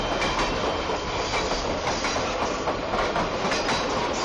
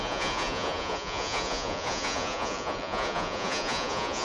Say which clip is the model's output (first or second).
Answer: second